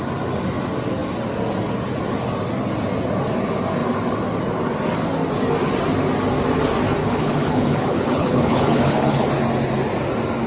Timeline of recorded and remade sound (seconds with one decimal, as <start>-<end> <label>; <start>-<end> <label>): 0.0-7.0 recorded; 7.0-9.3 remade; 9.3-10.5 recorded